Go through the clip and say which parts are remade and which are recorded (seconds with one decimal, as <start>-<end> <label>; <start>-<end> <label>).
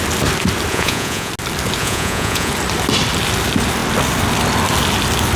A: 0.0-0.7 recorded; 0.7-1.3 remade; 1.3-1.8 recorded; 1.8-2.5 remade; 2.5-5.4 recorded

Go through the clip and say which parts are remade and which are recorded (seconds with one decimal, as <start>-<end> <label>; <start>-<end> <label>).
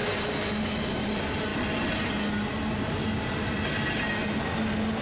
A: 0.0-5.0 recorded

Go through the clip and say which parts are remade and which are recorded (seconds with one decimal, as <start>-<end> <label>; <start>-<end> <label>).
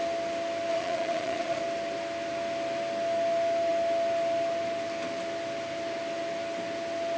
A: 0.0-0.7 recorded; 0.7-1.6 remade; 1.6-7.2 recorded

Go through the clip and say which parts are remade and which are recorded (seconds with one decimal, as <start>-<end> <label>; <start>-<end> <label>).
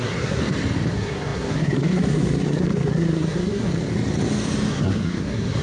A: 0.0-0.4 remade; 0.4-0.9 recorded; 0.9-3.7 remade; 3.7-4.7 recorded; 4.7-5.6 remade